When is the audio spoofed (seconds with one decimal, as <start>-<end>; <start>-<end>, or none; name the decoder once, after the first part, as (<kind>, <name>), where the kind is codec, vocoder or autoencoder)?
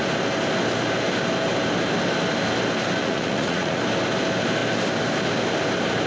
3.0-3.8 (vocoder, Vocos)